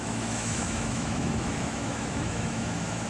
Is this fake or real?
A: fake